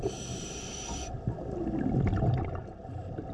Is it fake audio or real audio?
real